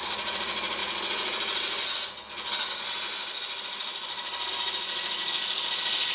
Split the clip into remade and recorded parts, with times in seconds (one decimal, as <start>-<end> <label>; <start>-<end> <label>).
0.0-6.1 recorded